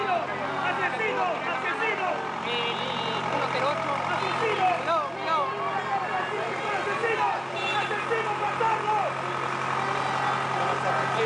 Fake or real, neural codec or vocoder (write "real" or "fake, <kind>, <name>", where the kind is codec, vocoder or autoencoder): real